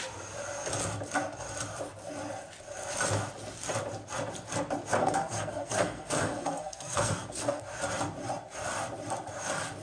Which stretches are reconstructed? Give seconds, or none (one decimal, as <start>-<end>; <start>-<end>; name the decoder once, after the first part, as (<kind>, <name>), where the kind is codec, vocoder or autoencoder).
5.0-7.6 (codec, SNAC)